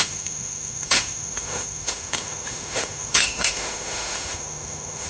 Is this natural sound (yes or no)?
no